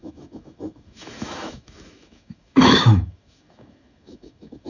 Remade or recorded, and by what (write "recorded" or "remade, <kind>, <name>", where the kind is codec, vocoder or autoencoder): remade, autoencoder, DAC-VAE